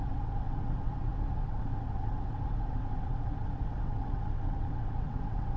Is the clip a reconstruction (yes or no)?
yes